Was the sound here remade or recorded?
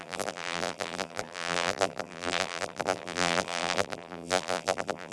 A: remade